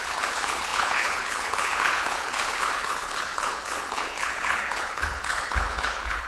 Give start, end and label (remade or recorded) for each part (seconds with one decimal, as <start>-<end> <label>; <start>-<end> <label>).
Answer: 0.0-6.3 remade